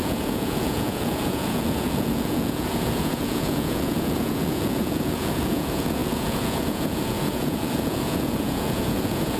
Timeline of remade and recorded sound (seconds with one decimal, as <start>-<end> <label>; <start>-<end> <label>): 0.0-9.4 remade